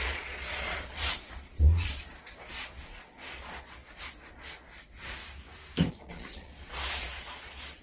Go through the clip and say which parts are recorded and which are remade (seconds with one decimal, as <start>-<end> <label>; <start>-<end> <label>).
0.0-5.2 remade; 5.2-5.9 recorded; 5.9-7.8 remade